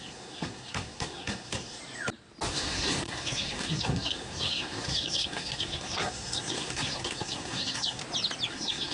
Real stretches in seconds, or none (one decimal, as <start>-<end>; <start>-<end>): 1.8-2.5; 8.0-8.5